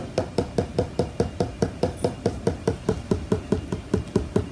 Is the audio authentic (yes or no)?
yes